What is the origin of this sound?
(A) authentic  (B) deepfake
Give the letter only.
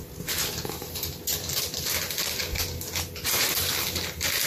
A